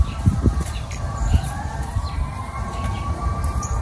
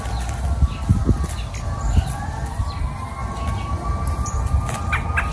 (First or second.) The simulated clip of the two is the first